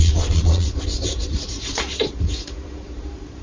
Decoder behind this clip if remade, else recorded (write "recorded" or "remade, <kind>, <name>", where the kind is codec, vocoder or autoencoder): remade, vocoder, Vocos